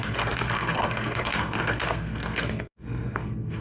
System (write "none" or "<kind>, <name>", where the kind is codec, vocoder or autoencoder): codec, SNAC